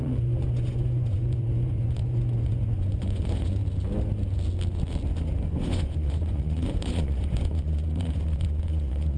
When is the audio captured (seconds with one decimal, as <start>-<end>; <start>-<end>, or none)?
3.6-5.4